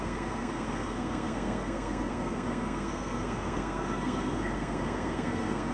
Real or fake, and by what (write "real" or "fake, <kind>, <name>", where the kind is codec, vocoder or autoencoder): fake, codec, SNAC